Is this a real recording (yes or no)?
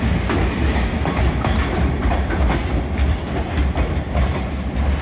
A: yes